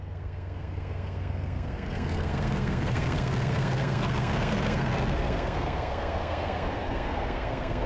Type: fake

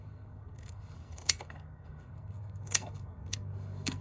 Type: fake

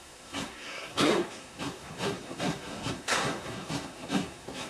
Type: fake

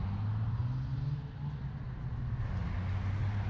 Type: real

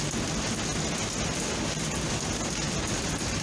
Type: real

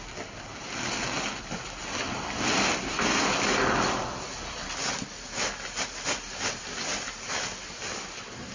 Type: real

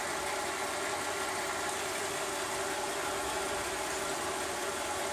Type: real